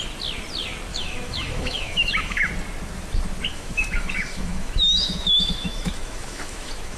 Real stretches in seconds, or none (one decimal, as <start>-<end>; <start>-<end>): 0.0-0.9; 2.5-3.5